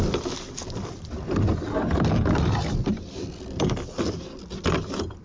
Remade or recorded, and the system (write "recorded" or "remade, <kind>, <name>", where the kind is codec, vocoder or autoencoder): recorded